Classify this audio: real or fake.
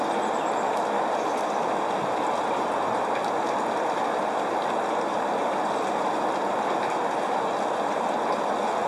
real